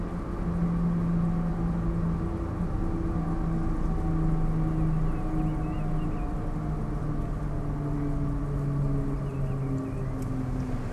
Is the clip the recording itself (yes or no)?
yes